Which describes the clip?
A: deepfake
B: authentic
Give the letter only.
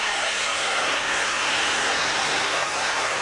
A